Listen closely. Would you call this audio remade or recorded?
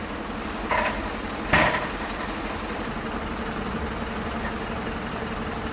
recorded